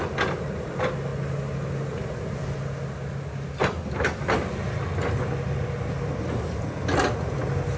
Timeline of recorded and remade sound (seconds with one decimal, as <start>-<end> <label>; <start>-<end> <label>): 0.0-7.8 recorded